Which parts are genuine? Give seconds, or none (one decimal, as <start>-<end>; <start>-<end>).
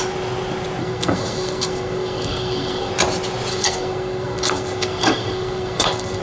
0.0-0.8; 2.9-3.5